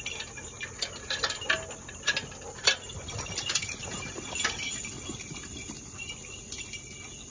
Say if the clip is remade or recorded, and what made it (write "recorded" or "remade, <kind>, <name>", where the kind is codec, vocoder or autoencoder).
recorded